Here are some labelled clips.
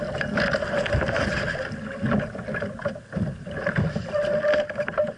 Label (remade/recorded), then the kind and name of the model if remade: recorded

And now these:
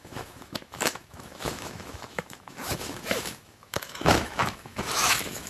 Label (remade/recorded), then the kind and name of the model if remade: remade, autoencoder, DAC-VAE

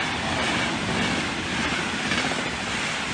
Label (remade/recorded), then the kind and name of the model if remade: recorded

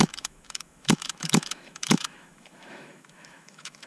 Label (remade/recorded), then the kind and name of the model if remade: remade, autoencoder, DAC-VAE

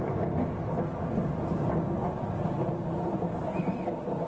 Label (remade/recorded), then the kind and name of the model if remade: recorded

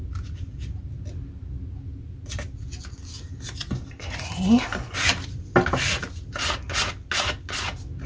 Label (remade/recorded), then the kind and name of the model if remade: recorded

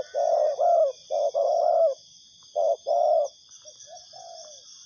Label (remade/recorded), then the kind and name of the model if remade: recorded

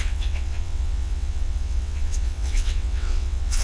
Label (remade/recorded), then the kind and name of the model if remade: remade, vocoder, WaveNeXt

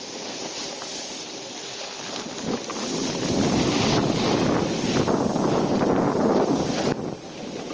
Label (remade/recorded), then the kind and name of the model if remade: recorded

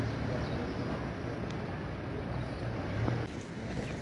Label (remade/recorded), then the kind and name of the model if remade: recorded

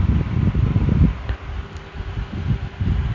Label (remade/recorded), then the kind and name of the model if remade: recorded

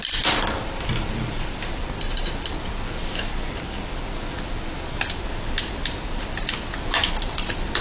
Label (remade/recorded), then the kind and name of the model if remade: recorded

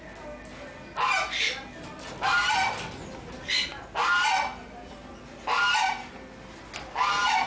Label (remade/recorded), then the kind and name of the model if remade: recorded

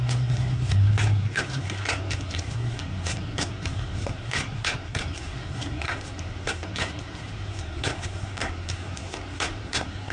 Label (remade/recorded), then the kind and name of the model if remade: remade, codec, SNAC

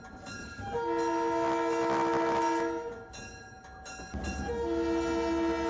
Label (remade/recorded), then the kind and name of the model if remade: recorded